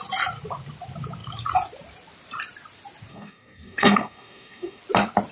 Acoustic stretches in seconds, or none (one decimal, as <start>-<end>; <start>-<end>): 0.0-3.1; 4.8-5.3